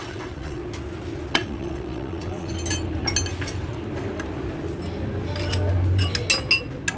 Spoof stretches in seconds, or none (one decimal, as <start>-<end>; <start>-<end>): 0.0-0.6; 1.3-2.5